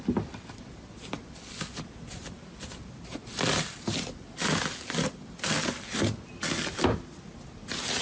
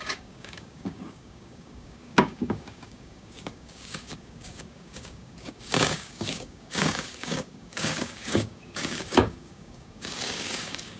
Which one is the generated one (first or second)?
second